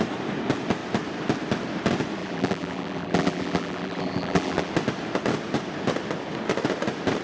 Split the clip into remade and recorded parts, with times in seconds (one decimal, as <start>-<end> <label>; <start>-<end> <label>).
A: 0.0-2.2 recorded; 2.2-4.7 remade; 4.7-7.2 recorded